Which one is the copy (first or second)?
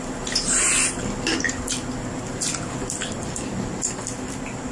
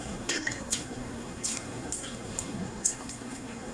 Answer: second